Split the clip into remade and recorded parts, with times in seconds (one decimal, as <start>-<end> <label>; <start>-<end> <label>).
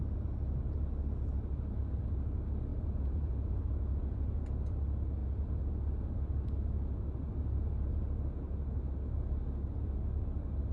0.0-2.7 recorded; 2.7-4.4 remade; 4.4-5.2 recorded; 5.2-5.7 remade; 5.7-10.7 recorded